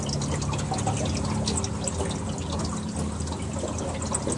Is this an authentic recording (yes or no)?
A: yes